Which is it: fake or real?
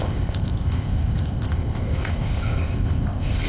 fake